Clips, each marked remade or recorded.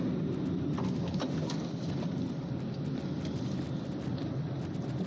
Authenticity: recorded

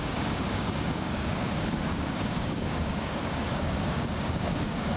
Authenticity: remade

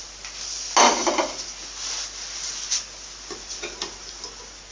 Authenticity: recorded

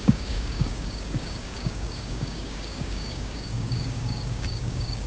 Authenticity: remade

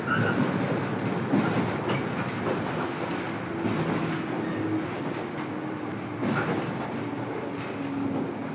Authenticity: recorded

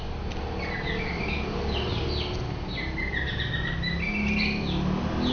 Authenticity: recorded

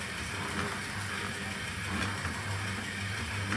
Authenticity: recorded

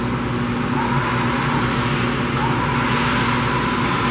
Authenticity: recorded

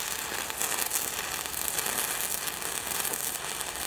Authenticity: recorded